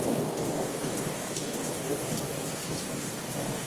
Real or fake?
fake